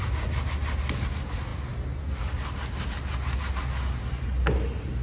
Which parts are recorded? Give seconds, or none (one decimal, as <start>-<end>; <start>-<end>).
0.0-5.0